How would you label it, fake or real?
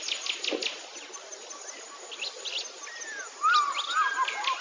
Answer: real